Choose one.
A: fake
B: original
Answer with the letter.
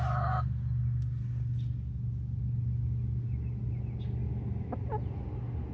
B